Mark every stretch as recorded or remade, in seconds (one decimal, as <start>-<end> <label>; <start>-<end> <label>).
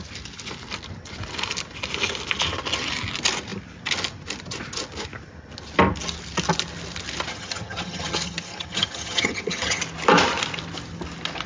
0.0-7.3 recorded; 7.3-9.8 remade; 9.8-11.5 recorded